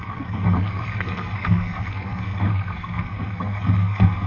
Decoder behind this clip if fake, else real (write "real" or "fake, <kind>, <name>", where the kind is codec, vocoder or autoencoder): fake, codec, SNAC